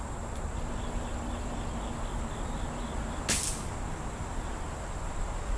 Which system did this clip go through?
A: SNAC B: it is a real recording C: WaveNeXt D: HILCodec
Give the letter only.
B